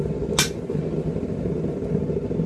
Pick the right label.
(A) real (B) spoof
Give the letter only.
A